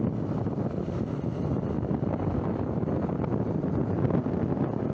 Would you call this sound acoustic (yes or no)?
yes